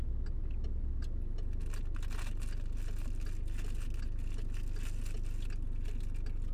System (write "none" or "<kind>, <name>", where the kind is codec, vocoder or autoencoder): none